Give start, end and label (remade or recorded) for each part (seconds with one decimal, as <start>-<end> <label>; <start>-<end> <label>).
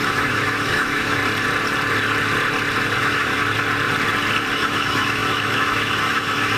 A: 0.0-1.2 remade; 1.2-3.0 recorded; 3.0-3.4 remade; 3.4-4.5 recorded; 4.5-6.6 remade